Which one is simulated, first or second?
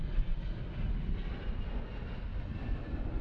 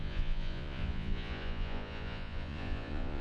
second